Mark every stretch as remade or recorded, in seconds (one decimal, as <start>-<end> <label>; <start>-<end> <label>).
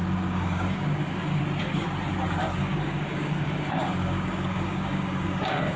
0.0-1.4 remade; 1.4-2.6 recorded; 2.6-5.8 remade